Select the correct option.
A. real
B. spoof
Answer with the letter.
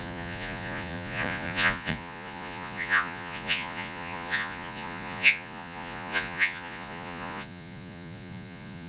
B